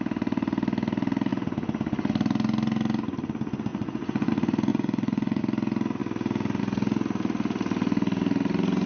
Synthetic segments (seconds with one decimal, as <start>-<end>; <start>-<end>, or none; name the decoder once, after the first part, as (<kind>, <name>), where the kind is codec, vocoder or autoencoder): 3.7-4.3 (vocoder, Vocos); 4.7-5.4